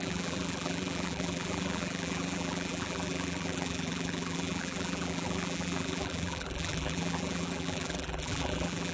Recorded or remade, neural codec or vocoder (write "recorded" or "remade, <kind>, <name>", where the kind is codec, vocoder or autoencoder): remade, vocoder, BigVGAN v2